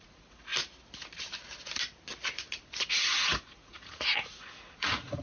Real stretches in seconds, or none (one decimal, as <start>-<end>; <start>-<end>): 0.5-2.9